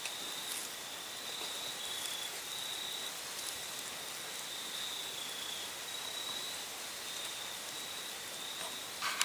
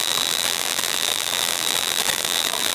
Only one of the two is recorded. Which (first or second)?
first